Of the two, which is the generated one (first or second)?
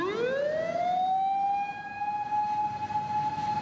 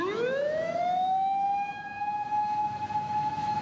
second